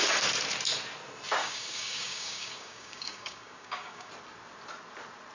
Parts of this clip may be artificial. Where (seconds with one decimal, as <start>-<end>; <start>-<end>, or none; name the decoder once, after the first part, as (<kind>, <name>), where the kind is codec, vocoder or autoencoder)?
1.4-4.1 (codec, DAC)